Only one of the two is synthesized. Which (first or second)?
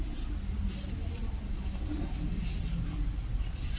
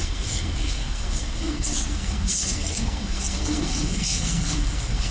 second